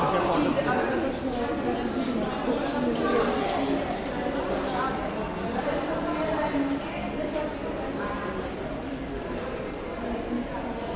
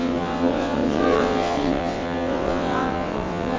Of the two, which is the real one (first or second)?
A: first